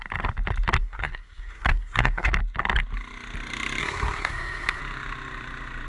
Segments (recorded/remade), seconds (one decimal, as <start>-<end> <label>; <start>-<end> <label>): 0.0-0.8 recorded; 0.8-2.3 remade; 2.3-3.8 recorded; 3.8-4.8 remade; 4.8-5.9 recorded